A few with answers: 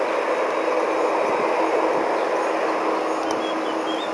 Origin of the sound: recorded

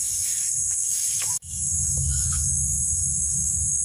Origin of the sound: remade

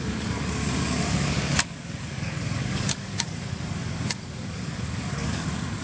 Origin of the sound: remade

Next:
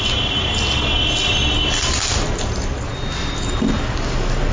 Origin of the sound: recorded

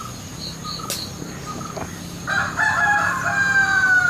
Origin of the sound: recorded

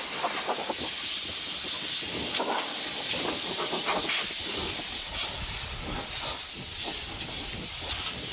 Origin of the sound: recorded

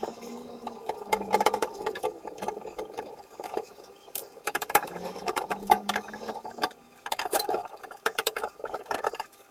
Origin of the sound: remade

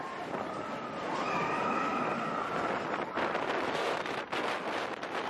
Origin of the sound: recorded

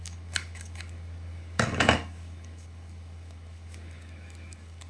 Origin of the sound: remade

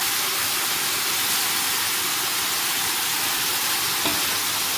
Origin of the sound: recorded